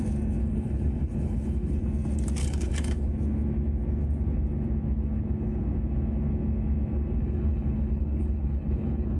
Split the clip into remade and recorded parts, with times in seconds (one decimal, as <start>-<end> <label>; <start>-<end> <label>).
0.0-0.4 recorded; 0.4-1.8 remade; 1.8-2.4 recorded; 2.4-3.1 remade; 3.1-7.2 recorded; 7.2-9.2 remade